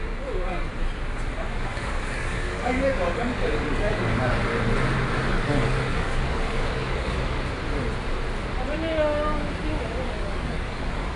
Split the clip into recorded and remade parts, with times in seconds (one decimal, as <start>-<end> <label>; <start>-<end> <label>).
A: 0.0-0.7 remade; 0.7-1.5 recorded; 1.5-4.4 remade; 4.4-5.3 recorded; 5.3-7.6 remade; 7.6-10.0 recorded; 10.0-11.2 remade